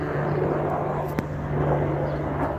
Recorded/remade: recorded